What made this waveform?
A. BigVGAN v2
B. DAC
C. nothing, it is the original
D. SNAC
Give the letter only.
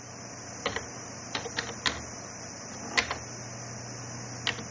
C